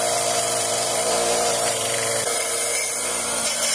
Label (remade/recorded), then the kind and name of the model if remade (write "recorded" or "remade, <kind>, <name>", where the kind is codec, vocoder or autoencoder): remade, vocoder, BigVGAN v2